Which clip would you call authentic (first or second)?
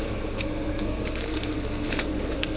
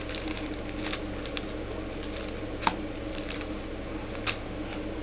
second